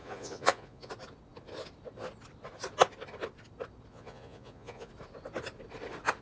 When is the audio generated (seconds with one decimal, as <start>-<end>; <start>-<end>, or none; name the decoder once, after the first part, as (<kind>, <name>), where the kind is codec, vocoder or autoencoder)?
0.0-0.9 (vocoder, Vocos); 3.9-4.9